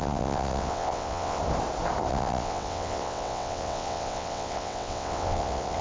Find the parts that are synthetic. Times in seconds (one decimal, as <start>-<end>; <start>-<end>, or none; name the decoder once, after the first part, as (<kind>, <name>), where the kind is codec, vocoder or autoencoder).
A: 0.0-1.4 (vocoder, WaveNeXt); 2.1-5.8